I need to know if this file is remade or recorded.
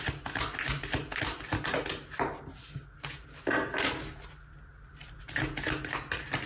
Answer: recorded